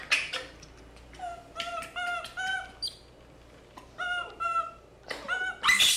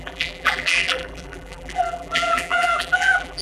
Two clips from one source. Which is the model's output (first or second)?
second